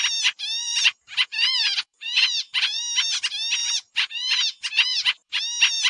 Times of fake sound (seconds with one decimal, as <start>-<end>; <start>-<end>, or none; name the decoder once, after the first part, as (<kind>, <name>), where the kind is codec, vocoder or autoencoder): 0.6-2.8 (vocoder, Vocos); 3.6-5.4